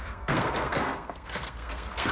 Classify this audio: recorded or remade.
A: remade